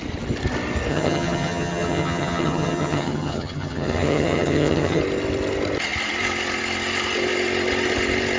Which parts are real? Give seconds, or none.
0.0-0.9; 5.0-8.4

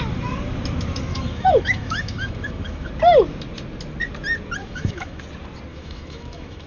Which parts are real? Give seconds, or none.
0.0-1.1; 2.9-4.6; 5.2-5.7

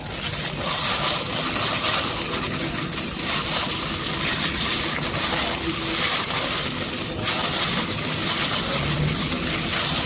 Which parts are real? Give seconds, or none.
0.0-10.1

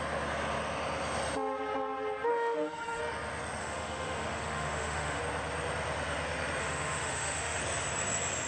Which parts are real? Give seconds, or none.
0.0-2.3; 3.0-3.6; 5.2-6.6; 7.6-8.5

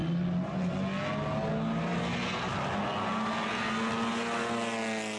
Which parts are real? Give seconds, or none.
0.0-5.2

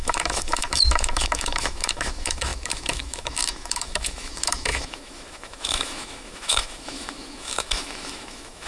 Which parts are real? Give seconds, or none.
none

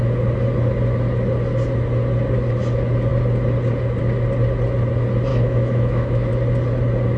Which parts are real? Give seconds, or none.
0.0-5.3; 6.3-7.2

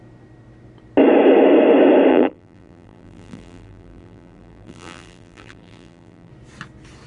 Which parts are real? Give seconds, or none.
0.0-2.1; 6.3-7.1